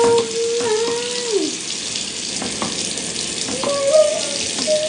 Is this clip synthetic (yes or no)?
no